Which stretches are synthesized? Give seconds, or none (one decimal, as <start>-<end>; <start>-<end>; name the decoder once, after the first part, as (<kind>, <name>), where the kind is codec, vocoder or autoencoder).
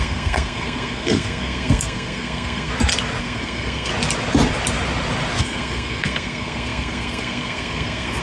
0.0-2.7 (codec, SNAC); 3.2-3.9; 5.4-8.2